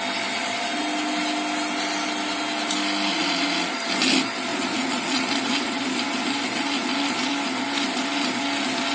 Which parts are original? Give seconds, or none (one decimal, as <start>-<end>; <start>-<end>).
0.0-3.1; 3.7-4.5; 5.3-8.9